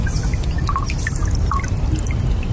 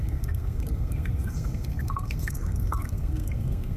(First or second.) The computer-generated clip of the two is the second